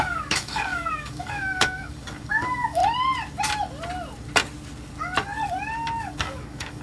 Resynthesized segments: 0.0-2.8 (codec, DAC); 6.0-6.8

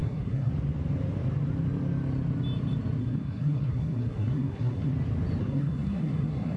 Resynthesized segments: 0.0-0.5 (codec, SNAC); 3.0-4.9; 5.4-6.6

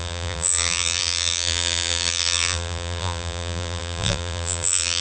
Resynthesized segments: 0.0-5.0 (vocoder, BigVGAN v2)

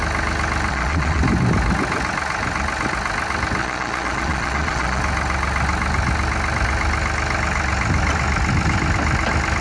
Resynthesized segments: 0.7-1.2 (vocoder, Vocos); 3.6-5.0

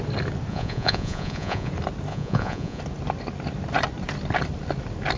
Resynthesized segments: 0.5-1.7 (vocoder, Vocos); 2.1-2.8

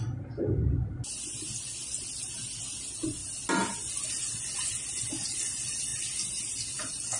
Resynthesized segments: none